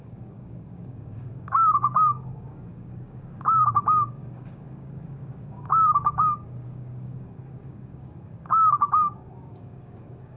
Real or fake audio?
fake